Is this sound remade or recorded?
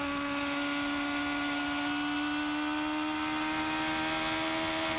recorded